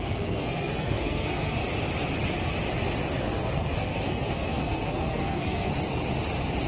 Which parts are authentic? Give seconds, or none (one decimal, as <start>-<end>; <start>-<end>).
1.6-3.2; 5.7-6.7